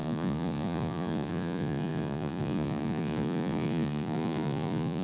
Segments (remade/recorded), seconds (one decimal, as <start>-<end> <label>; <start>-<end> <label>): 0.0-5.0 remade